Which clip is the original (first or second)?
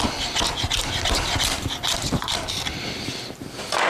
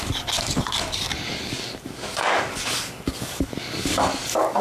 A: first